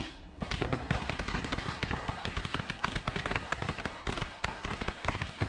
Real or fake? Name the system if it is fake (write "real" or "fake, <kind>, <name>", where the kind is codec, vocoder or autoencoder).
fake, codec, SNAC